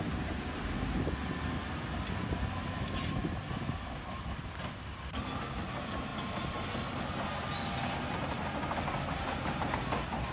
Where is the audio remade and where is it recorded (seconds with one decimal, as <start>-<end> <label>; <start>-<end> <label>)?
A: 0.0-10.3 recorded